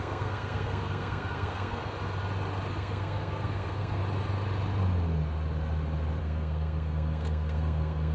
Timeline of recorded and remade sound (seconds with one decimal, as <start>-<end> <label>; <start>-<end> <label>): 0.0-1.9 remade; 1.9-2.7 recorded; 2.7-4.0 remade; 4.0-6.2 recorded; 6.2-8.1 remade